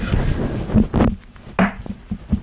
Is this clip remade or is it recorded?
recorded